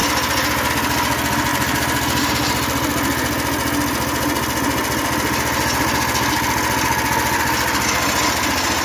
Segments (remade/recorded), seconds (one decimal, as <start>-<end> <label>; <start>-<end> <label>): 0.0-1.5 recorded; 1.5-2.3 remade; 2.3-8.8 recorded